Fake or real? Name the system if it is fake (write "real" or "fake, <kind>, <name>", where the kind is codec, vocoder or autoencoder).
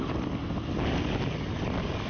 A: real